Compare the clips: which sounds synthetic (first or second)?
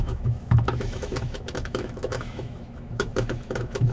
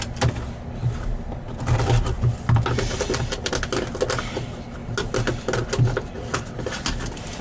first